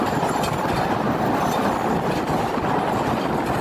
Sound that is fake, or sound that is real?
real